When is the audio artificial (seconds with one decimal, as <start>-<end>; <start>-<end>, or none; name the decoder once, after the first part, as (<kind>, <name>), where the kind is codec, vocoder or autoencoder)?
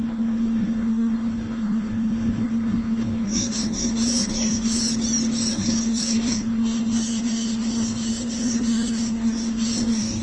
0.0-4.8 (codec, SNAC); 5.5-10.2